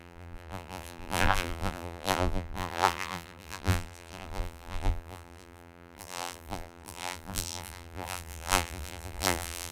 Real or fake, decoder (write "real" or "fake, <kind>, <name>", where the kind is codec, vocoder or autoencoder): fake, vocoder, BigVGAN v2